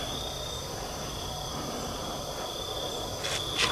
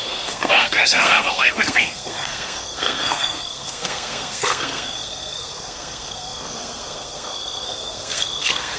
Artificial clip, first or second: second